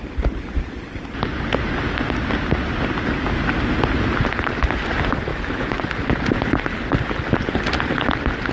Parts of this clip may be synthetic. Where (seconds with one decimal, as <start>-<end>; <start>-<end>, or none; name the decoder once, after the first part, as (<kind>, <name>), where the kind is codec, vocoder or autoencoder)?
5.3-5.8 (autoencoder, DAC-VAE)